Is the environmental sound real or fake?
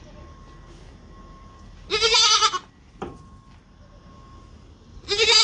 real